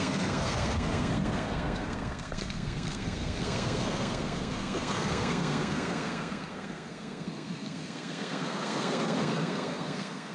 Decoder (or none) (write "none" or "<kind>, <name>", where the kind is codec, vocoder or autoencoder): codec, SNAC